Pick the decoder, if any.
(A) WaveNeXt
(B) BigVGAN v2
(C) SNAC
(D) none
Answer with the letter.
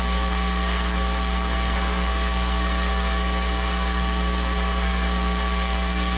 C